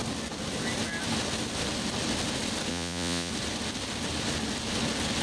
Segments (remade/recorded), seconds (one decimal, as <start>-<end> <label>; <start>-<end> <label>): 0.0-2.7 recorded; 2.7-3.3 remade; 3.3-5.2 recorded

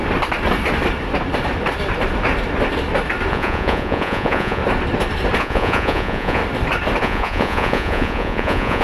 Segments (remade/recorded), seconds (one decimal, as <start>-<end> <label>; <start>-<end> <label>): 0.0-3.3 recorded; 3.3-4.6 remade; 4.6-5.4 recorded; 5.4-6.4 remade; 6.4-7.0 recorded; 7.0-8.8 remade

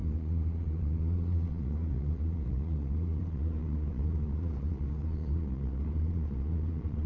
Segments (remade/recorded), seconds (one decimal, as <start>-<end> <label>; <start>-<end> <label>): 0.0-7.1 remade

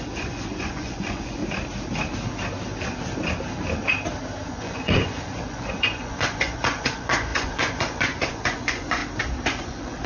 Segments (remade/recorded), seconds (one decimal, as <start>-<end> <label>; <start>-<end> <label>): 0.0-1.4 remade; 1.4-4.5 recorded; 4.5-9.0 remade; 9.0-9.6 recorded; 9.6-10.1 remade

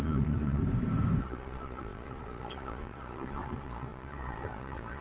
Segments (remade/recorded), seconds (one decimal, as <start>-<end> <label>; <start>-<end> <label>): 0.0-0.6 remade; 0.6-1.2 recorded; 1.2-5.0 remade

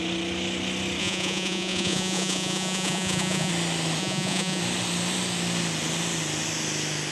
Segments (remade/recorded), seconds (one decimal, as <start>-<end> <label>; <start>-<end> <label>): 0.0-1.0 recorded; 1.0-3.5 remade; 3.5-4.0 recorded; 4.0-4.6 remade; 4.6-7.1 recorded

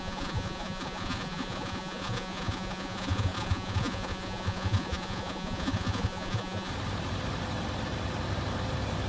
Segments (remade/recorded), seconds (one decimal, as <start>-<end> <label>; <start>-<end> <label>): 0.0-6.7 remade; 6.7-9.1 recorded